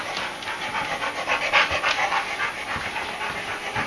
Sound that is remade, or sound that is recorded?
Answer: recorded